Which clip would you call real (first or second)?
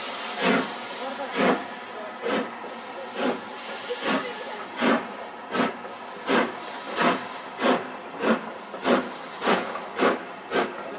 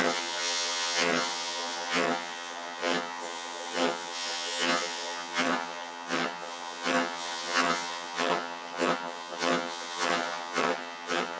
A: first